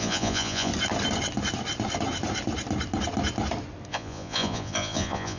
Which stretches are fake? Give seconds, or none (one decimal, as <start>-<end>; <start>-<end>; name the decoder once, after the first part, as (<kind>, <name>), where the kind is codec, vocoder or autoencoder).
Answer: 0.0-0.7 (vocoder, Vocos); 3.9-5.4